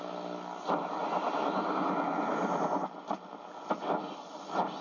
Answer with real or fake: real